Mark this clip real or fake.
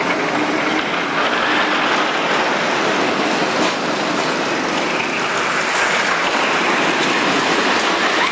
real